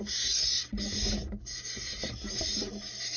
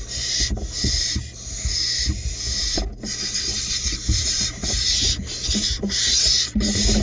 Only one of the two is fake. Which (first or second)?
second